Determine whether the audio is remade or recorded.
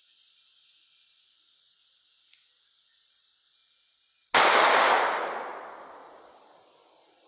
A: recorded